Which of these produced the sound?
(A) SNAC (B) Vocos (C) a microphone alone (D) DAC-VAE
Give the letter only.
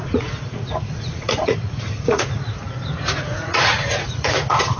B